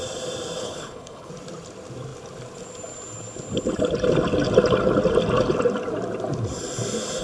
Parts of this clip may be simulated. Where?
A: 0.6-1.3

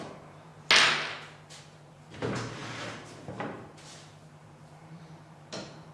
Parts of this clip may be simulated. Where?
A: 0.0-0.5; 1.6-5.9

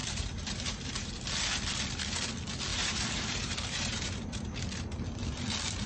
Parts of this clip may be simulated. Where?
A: 0.0-1.1; 2.7-4.6

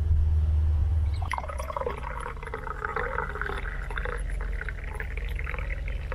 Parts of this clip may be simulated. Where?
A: 0.8-1.9

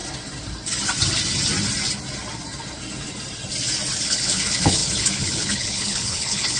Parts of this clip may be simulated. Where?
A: 4.0-6.6

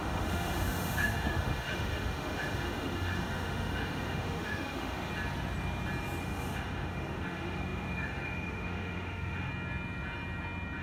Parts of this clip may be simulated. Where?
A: 0.0-5.1; 6.2-9.5